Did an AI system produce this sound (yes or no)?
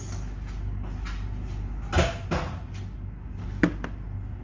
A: no